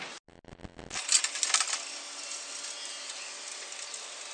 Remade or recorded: recorded